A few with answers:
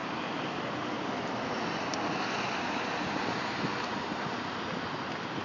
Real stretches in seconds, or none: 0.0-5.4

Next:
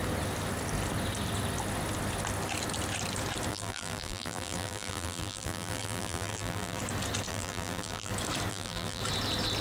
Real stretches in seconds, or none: 0.0-3.5; 6.8-7.3; 8.1-8.5; 9.0-9.6

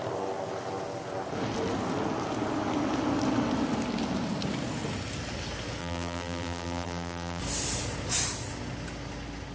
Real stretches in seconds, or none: 0.0-5.8; 7.4-9.5